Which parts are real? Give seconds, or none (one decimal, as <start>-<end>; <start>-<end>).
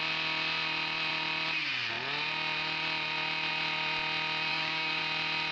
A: 0.0-4.5; 5.0-5.5